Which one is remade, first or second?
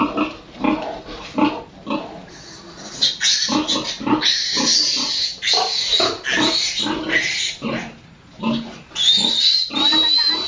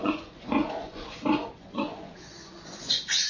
second